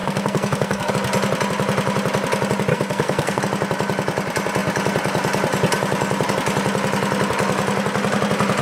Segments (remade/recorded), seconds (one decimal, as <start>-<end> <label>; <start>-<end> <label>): 0.0-0.9 remade; 0.9-2.7 recorded; 2.7-3.4 remade; 3.4-8.6 recorded

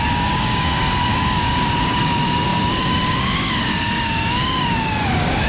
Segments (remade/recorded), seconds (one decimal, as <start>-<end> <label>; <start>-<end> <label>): 0.0-5.5 remade

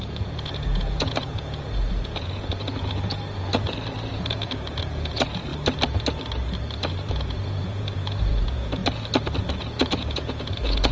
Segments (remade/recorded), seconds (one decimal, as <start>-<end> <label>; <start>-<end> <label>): 0.0-3.5 remade; 3.5-4.1 recorded; 4.1-5.5 remade; 5.5-7.1 recorded; 7.1-8.8 remade; 8.8-9.5 recorded; 9.5-10.9 remade

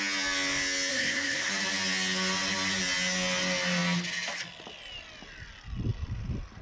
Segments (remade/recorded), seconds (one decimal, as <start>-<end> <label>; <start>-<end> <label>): 0.0-0.9 recorded; 0.9-1.5 remade; 1.5-6.6 recorded

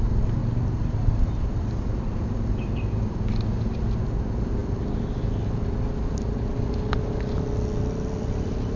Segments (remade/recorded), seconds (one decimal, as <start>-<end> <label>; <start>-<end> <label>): 0.0-8.8 recorded

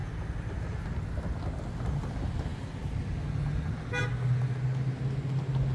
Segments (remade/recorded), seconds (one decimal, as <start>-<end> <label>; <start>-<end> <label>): 0.0-5.7 recorded